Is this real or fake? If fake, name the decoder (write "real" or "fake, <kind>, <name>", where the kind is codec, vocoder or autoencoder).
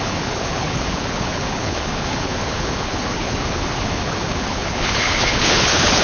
fake, codec, HILCodec